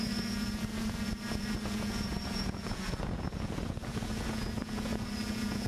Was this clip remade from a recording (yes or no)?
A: yes